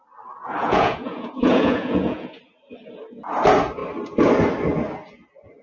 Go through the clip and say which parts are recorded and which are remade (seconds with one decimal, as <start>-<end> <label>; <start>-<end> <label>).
0.0-0.6 recorded; 0.6-2.4 remade; 2.4-5.6 recorded